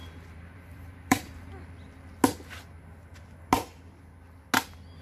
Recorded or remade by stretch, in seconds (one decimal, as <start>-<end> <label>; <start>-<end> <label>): 0.0-1.5 remade; 1.5-5.0 recorded

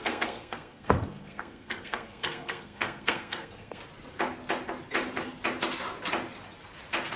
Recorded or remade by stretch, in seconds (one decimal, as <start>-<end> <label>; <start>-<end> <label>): 0.0-3.8 remade; 3.8-7.2 recorded

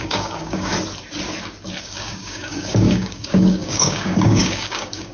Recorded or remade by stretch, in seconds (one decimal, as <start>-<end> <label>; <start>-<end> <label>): 0.0-0.7 remade; 0.7-1.8 recorded; 1.8-5.1 remade

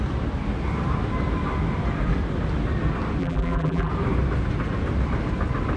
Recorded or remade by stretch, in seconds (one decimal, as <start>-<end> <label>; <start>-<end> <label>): 0.0-3.2 recorded; 3.2-3.9 remade; 3.9-5.8 recorded

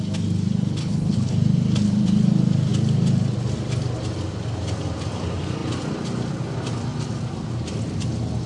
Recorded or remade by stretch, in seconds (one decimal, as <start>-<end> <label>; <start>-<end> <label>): 0.0-0.8 recorded; 0.8-1.3 remade; 1.3-8.5 recorded

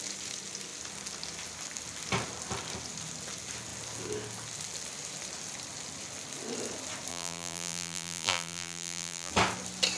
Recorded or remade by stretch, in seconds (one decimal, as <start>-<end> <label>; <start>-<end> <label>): 0.0-7.1 recorded; 7.1-9.3 remade; 9.3-10.0 recorded

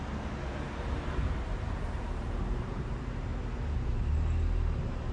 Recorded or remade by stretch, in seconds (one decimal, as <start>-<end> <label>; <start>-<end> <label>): 0.0-3.3 remade; 3.3-5.1 recorded